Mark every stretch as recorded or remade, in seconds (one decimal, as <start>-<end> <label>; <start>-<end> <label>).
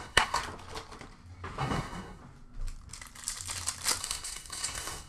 0.0-0.4 remade; 0.4-1.6 recorded; 1.6-2.2 remade; 2.2-4.0 recorded; 4.0-5.1 remade